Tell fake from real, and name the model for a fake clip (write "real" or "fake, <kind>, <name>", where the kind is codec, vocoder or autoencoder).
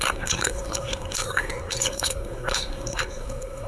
fake, codec, SNAC